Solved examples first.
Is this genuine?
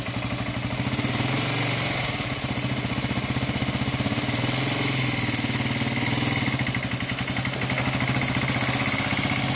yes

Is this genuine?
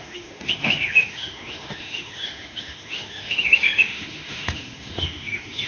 no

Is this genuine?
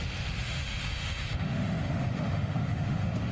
no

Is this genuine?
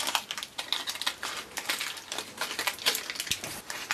yes